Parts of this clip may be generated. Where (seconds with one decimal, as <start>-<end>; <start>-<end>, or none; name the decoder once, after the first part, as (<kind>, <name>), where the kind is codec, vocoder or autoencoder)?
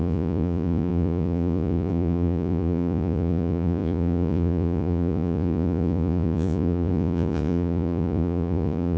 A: 0.0-9.0 (vocoder, Vocos)